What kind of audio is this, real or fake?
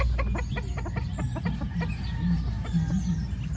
real